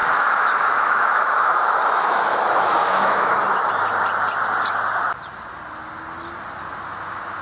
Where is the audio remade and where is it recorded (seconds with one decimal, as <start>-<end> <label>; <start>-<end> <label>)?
0.0-3.7 remade; 3.7-7.4 recorded